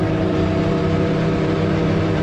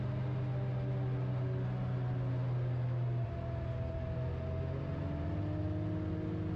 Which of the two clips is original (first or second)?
second